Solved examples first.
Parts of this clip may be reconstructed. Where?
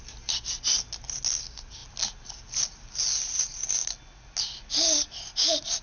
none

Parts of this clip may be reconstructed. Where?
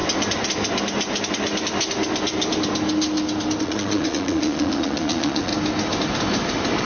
3.6-5.5 (vocoder, Vocos)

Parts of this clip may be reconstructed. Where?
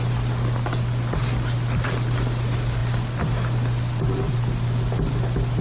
none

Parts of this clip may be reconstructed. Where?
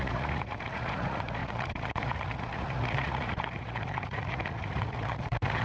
0.0-5.6 (vocoder, Vocos)